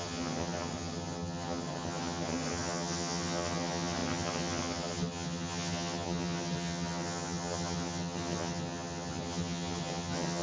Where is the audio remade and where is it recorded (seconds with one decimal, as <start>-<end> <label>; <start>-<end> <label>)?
0.0-10.4 remade

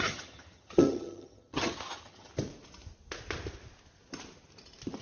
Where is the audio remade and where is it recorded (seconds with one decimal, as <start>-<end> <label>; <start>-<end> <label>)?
0.0-2.3 remade; 2.3-5.0 recorded

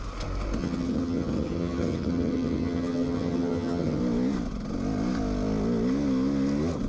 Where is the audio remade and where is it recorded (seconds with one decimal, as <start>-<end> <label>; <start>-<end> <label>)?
0.0-0.6 recorded; 0.6-4.0 remade; 4.0-6.9 recorded

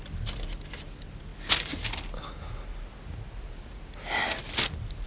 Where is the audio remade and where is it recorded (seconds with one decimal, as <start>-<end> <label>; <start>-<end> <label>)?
0.0-5.1 recorded

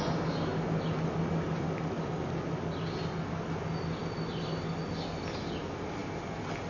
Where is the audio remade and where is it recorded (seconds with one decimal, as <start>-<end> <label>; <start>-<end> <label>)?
0.0-6.7 recorded

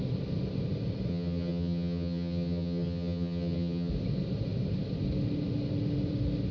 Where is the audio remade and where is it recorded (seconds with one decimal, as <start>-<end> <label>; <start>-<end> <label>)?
0.0-1.1 recorded; 1.1-3.9 remade; 3.9-6.5 recorded